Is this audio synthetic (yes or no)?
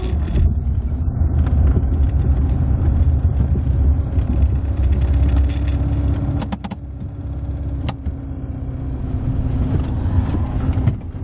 no